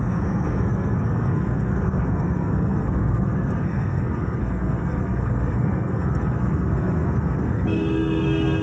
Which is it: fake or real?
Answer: fake